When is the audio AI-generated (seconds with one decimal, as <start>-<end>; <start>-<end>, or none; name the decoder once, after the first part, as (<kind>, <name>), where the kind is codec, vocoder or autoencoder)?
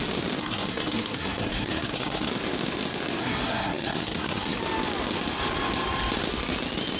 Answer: 0.4-2.3 (codec, SNAC); 3.2-4.6